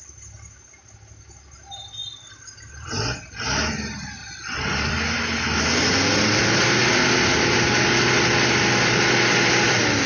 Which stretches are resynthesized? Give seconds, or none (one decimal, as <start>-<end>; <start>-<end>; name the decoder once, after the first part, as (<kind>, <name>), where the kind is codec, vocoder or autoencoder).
none